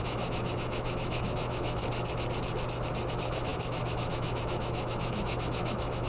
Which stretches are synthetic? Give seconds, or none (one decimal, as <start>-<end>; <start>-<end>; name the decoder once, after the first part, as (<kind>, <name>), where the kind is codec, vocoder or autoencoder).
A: 0.0-1.8 (autoencoder, DAC-VAE); 3.1-6.1